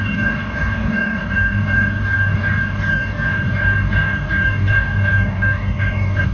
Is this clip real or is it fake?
fake